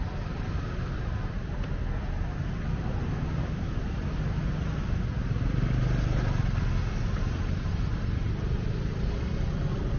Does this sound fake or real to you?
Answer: real